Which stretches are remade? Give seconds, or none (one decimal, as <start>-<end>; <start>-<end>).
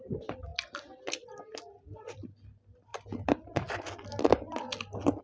none